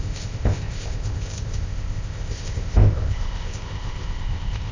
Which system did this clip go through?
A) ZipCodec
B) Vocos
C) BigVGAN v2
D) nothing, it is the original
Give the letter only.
A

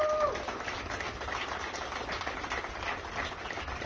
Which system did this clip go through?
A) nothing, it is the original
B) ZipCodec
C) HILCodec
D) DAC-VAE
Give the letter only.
A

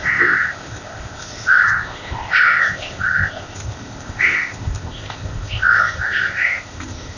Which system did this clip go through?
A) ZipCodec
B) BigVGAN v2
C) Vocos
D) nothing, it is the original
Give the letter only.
A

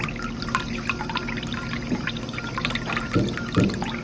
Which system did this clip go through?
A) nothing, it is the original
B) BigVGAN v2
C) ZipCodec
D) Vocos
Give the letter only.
A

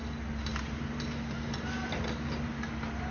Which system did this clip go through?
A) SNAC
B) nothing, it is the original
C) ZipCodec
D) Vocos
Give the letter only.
B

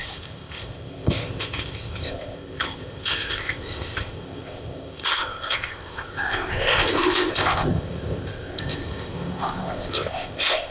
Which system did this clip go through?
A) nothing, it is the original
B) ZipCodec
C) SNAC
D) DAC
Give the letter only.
B